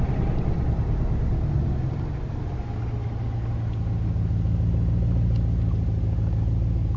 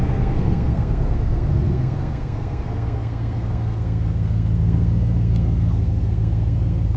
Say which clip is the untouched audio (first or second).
first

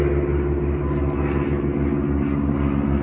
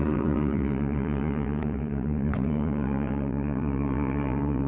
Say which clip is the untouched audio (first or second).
first